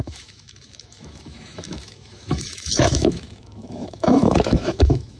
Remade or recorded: remade